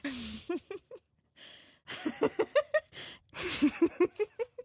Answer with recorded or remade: recorded